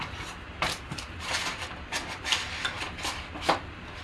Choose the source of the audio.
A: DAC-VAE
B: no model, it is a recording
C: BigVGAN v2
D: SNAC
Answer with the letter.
B